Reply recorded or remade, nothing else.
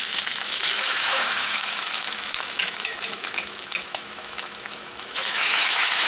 remade